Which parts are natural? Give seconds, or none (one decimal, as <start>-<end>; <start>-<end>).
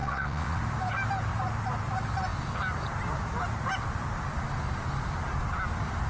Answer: 0.6-6.1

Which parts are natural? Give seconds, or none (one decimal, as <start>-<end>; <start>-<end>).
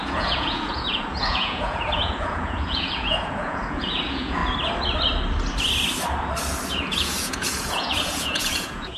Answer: 4.4-6.7